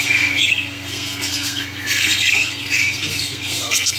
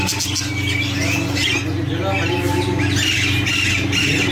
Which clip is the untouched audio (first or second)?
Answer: second